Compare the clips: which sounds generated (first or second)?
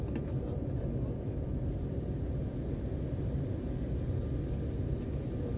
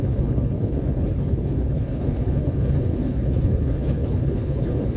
second